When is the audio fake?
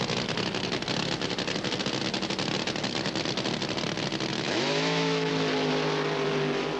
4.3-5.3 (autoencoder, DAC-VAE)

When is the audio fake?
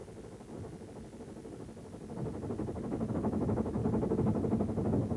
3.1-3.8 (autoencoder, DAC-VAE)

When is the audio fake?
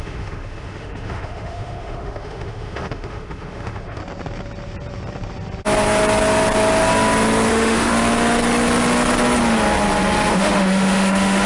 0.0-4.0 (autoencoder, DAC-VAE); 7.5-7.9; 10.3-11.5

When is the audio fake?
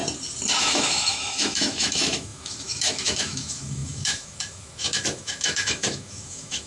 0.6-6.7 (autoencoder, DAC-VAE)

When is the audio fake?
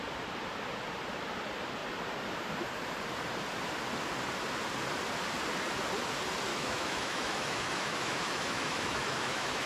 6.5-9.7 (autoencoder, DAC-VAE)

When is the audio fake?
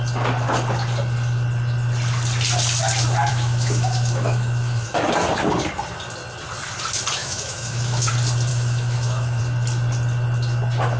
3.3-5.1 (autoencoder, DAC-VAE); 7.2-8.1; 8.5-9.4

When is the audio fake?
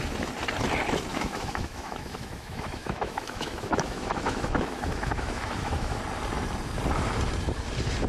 1.1-6.0 (autoencoder, DAC-VAE)